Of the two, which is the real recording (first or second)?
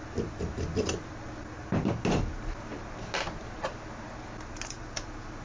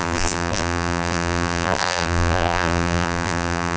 first